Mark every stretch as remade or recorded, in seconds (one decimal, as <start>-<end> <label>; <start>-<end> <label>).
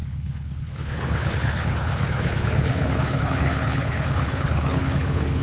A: 0.0-5.4 remade